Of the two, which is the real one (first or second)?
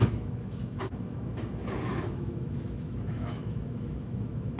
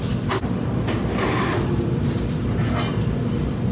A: second